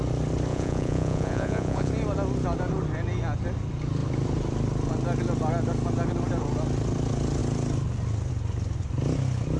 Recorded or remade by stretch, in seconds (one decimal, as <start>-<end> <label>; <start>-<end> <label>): 0.0-0.5 recorded; 0.5-1.9 remade; 1.9-9.6 recorded